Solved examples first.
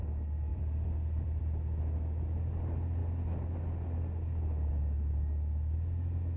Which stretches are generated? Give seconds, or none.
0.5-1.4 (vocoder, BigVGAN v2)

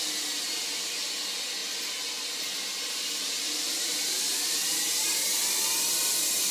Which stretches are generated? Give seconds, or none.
none

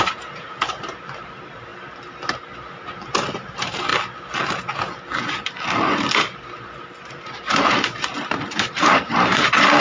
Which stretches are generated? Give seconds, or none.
0.0-1.7 (vocoder, BigVGAN v2); 3.0-3.9; 7.1-9.8